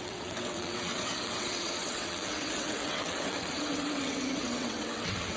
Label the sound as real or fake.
fake